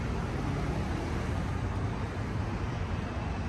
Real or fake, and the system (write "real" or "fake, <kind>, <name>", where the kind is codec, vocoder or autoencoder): real